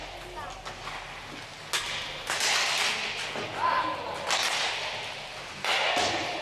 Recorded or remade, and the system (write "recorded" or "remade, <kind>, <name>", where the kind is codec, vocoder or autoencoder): recorded